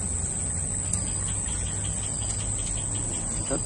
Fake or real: real